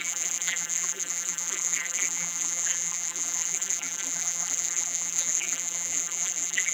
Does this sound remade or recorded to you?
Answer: remade